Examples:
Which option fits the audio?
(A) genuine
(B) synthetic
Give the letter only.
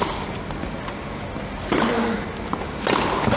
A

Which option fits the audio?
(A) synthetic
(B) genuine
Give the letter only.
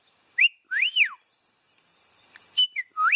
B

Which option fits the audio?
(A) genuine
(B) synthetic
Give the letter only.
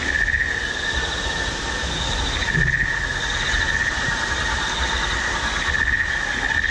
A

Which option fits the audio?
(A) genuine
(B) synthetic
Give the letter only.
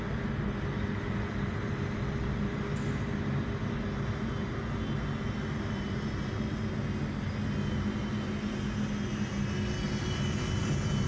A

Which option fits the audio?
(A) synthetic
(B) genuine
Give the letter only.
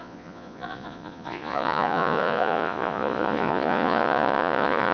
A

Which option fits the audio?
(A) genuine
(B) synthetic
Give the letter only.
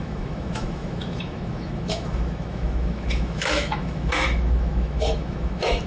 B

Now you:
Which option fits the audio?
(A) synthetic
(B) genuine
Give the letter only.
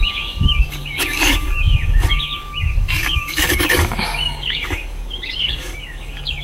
A